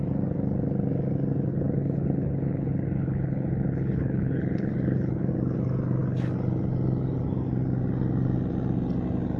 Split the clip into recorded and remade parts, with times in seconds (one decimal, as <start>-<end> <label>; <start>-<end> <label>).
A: 0.0-1.5 recorded; 1.5-5.3 remade; 5.3-9.4 recorded